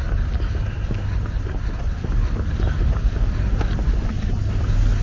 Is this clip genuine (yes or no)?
yes